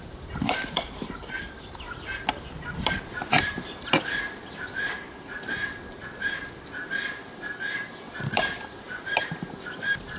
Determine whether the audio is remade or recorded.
remade